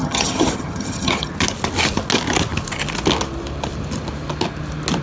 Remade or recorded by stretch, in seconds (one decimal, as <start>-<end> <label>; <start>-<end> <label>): 0.0-1.3 remade; 1.3-5.0 recorded